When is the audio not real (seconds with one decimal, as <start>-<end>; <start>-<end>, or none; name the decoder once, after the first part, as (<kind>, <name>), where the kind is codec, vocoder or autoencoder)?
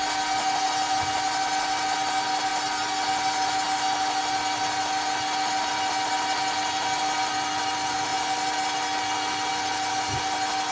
none